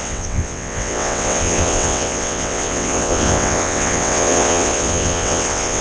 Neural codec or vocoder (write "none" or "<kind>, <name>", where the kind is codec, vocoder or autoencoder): vocoder, WaveNeXt